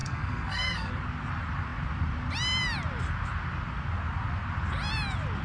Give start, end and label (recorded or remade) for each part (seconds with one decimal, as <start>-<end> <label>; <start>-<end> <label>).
0.0-0.9 remade; 0.9-5.4 recorded